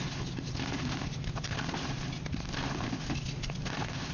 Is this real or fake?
real